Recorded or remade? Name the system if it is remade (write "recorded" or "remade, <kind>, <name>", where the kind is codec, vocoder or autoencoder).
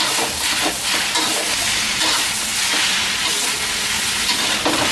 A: recorded